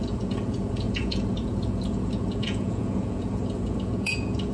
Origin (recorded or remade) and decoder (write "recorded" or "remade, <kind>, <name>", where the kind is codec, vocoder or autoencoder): remade, vocoder, Vocos